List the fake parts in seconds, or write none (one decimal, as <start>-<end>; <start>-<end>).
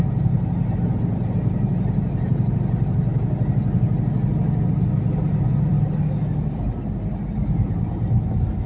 none